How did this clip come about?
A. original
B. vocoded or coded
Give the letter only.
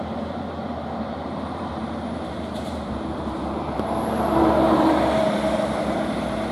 B